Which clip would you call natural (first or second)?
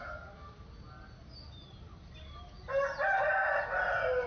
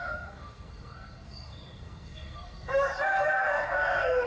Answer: first